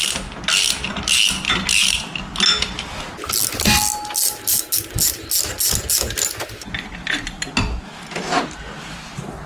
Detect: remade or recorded recorded